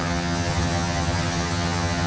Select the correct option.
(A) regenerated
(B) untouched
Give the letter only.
A